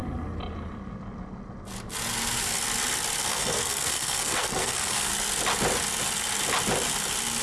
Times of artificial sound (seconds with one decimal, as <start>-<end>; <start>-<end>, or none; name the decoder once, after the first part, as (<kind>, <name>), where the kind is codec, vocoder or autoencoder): 3.3-5.1 (codec, SNAC)